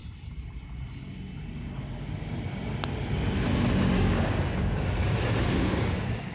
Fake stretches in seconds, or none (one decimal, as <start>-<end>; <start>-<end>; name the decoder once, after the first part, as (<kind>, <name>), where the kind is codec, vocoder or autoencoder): 3.8-5.0 (codec, DAC); 5.8-6.3